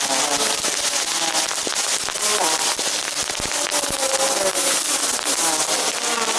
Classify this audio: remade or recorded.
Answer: recorded